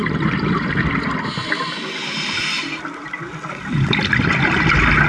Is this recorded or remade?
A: recorded